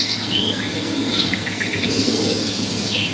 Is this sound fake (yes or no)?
yes